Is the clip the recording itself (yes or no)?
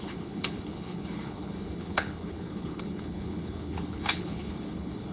no